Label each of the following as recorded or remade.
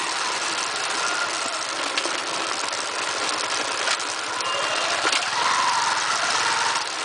recorded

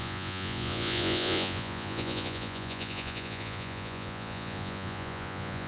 remade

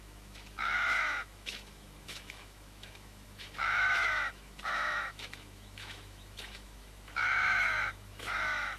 remade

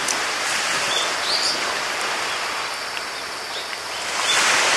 recorded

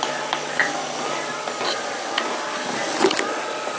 recorded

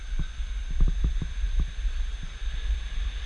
recorded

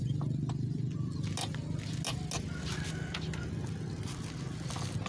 recorded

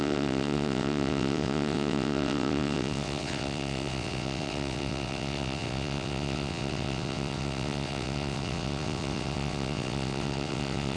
remade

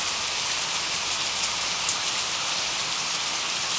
recorded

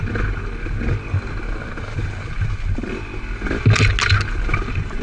recorded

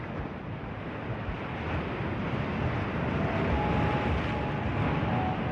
recorded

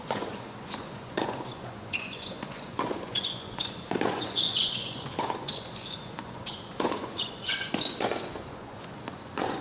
remade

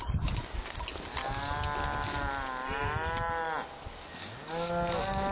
recorded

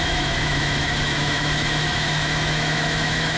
remade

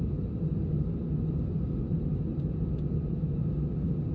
recorded